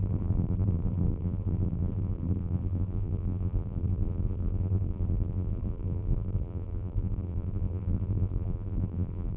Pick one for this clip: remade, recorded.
remade